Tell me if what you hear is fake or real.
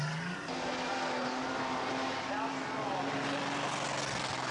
real